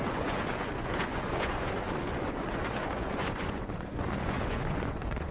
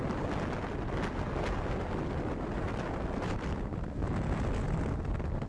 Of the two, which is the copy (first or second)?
first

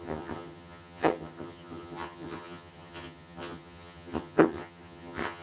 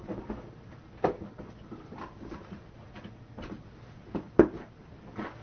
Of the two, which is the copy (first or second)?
first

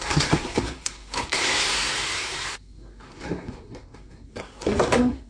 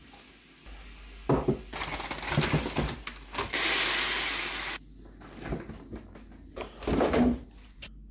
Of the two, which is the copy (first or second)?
first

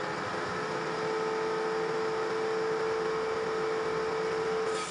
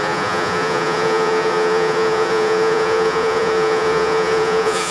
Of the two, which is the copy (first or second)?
second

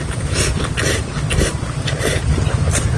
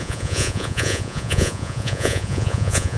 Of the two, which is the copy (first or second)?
second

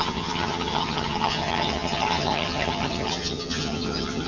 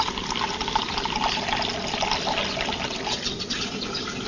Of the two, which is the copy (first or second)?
first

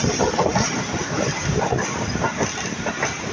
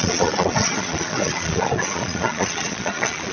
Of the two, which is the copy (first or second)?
second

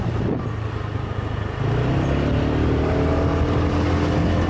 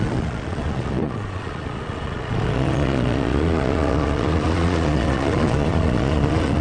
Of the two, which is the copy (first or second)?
second